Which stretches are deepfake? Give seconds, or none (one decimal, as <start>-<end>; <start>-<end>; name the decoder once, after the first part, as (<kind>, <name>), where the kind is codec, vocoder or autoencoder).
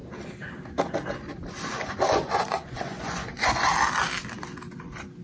1.7-3.7 (vocoder, Vocos)